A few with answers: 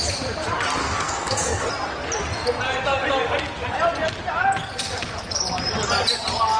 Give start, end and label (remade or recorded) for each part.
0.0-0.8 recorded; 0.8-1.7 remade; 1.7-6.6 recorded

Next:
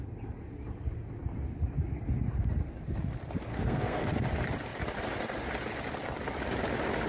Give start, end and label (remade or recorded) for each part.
0.0-3.5 recorded; 3.5-4.1 remade; 4.1-7.1 recorded

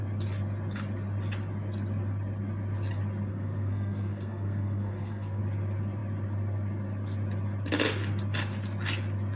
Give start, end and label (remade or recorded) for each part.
0.0-3.3 recorded; 3.3-5.4 remade; 5.4-9.4 recorded

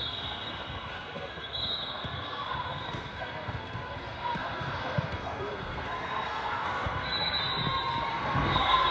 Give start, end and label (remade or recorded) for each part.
0.0-7.4 remade; 7.4-8.1 recorded; 8.1-8.9 remade

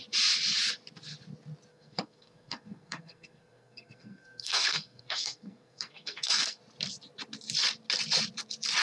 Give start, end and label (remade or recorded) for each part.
0.0-1.7 recorded; 1.7-6.6 remade; 6.6-8.8 recorded

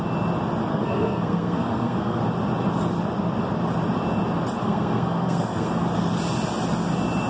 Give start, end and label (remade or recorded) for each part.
0.0-0.7 recorded; 0.7-2.2 remade; 2.2-4.6 recorded; 4.6-5.7 remade; 5.7-7.3 recorded